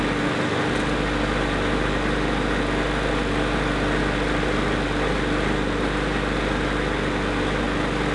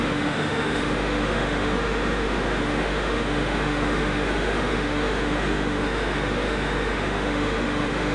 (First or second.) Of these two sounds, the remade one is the second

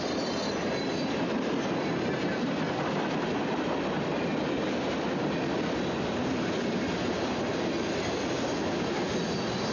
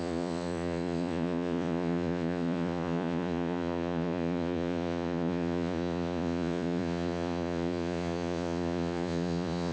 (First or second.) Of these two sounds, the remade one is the second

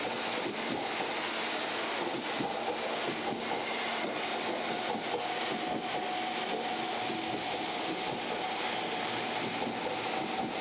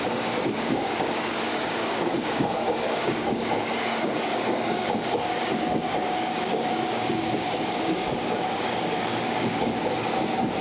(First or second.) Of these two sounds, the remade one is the second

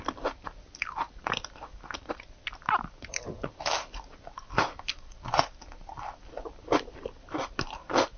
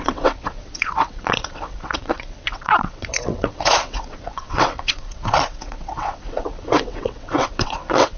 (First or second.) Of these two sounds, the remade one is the second